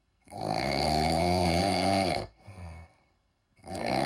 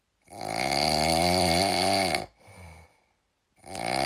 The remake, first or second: first